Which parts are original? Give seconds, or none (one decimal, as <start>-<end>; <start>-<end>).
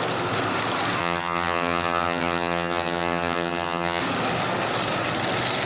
0.0-1.0; 4.0-5.7